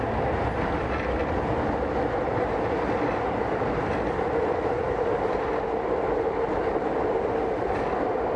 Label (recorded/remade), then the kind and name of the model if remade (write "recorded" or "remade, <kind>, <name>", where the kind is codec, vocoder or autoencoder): recorded